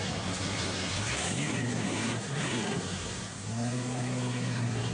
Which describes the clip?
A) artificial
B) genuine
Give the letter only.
A